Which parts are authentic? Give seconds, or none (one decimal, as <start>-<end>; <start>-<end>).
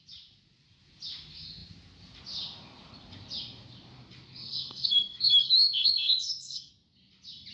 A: 0.0-4.4; 6.7-7.5